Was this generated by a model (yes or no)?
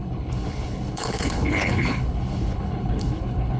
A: yes